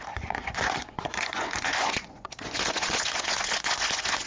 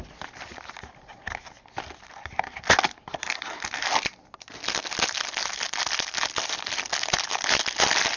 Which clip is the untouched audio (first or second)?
second